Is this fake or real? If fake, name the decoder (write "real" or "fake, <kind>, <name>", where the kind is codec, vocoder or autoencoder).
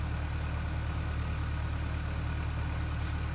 real